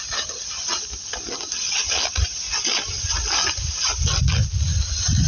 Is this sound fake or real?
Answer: real